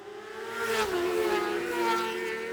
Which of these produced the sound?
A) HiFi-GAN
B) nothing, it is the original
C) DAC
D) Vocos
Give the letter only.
B